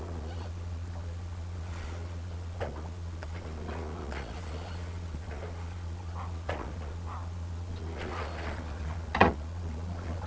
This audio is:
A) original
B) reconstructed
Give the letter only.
B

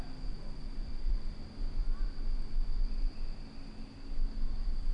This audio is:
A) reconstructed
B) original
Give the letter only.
B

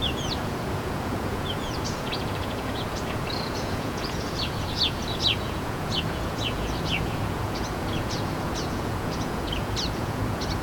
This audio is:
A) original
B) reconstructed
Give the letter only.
B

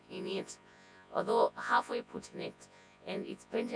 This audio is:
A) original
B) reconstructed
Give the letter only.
B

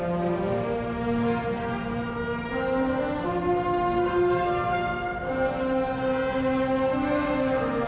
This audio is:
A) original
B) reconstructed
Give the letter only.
A